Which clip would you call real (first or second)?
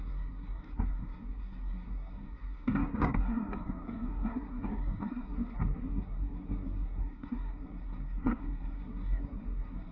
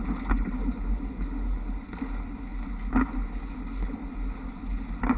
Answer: second